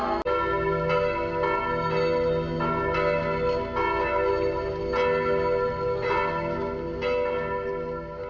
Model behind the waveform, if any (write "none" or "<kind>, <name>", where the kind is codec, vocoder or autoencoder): none